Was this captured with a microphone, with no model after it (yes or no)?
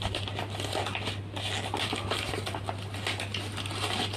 yes